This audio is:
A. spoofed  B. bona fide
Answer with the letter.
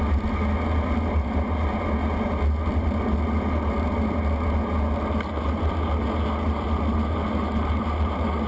B